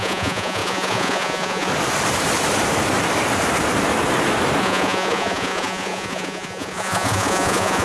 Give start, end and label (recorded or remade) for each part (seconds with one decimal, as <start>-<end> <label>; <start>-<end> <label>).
0.0-1.7 remade; 1.7-4.6 recorded; 4.6-7.8 remade